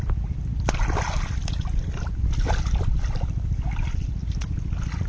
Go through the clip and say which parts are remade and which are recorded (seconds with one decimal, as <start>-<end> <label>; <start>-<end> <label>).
0.0-5.1 remade